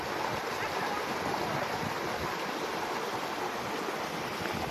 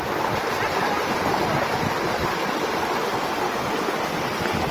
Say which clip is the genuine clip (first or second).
first